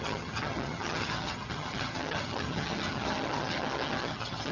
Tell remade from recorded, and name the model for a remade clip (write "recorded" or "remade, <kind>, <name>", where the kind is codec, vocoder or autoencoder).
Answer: remade, vocoder, HiFi-GAN